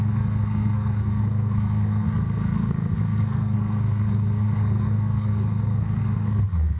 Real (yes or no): no